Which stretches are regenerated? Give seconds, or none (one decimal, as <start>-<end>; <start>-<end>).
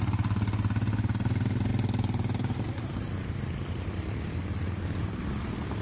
none